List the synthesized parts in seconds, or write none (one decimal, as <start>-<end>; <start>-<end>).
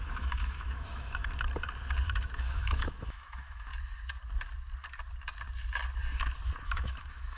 0.0-1.2; 2.4-3.7; 6.6-7.4